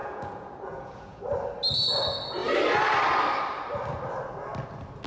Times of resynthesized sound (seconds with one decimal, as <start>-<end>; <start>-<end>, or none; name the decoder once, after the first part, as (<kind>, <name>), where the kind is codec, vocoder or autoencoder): 0.0-1.2 (vocoder, Vocos)